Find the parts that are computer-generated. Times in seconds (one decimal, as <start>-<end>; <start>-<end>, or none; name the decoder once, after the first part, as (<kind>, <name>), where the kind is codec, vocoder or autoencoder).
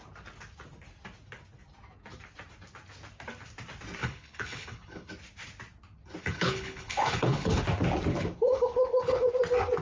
4.0-5.1 (codec, HILCodec); 6.2-7.6; 8.1-9.3